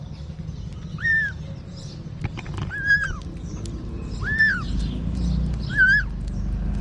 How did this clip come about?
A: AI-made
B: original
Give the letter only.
B